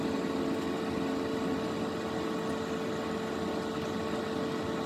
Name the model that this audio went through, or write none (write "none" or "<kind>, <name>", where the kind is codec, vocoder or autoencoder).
none